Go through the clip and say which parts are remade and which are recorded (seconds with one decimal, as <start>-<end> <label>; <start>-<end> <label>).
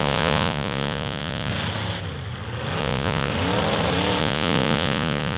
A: 0.0-1.5 remade; 1.5-2.8 recorded; 2.8-3.3 remade; 3.3-4.2 recorded; 4.2-5.4 remade